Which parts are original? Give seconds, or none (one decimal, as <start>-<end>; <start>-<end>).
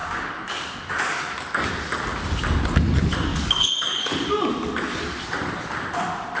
1.7-3.3; 4.5-6.4